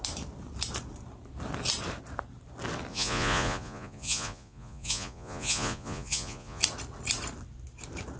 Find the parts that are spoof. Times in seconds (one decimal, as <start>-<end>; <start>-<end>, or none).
2.9-6.6